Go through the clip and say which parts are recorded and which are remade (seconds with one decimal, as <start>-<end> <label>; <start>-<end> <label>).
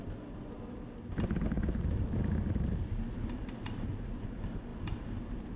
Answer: 0.0-3.4 recorded; 3.4-5.6 remade